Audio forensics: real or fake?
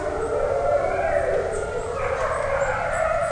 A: real